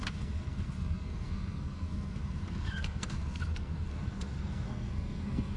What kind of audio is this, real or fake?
fake